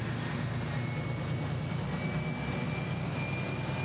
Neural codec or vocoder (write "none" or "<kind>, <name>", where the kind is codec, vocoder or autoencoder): none